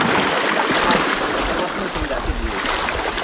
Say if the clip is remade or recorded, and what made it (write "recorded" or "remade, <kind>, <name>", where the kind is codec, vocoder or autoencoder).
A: recorded